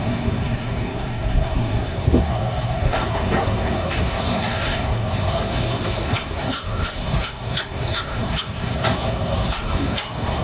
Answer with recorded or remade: remade